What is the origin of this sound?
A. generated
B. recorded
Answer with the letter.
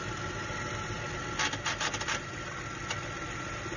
B